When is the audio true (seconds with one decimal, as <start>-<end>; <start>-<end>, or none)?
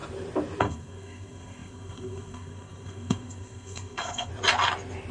0.0-0.6; 4.3-5.1